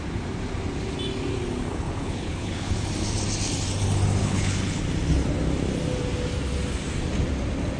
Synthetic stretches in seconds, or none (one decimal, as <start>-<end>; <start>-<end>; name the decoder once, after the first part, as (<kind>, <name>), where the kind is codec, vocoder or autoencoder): 1.7-2.9 (codec, HILCodec); 4.2-4.8